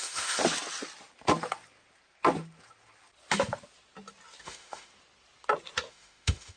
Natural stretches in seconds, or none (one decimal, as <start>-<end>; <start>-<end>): 0.4-4.4; 4.9-5.9